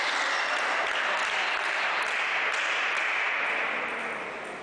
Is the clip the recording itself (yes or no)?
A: yes